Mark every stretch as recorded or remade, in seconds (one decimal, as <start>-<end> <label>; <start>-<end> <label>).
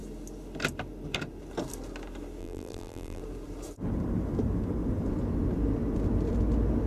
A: 0.0-2.4 recorded; 2.4-3.2 remade; 3.2-6.9 recorded